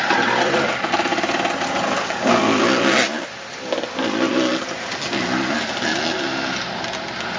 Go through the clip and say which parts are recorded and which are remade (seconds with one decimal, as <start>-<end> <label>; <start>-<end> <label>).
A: 0.0-7.4 recorded